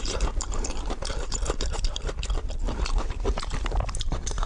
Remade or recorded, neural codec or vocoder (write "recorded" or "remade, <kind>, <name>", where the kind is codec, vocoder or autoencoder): remade, vocoder, BigVGAN v2